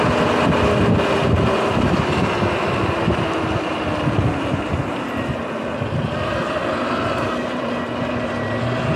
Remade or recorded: recorded